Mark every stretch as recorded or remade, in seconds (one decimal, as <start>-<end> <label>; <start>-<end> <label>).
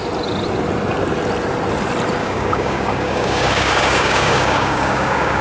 0.0-2.2 recorded; 2.2-5.4 remade